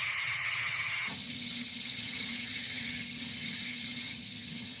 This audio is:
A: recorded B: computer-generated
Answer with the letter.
B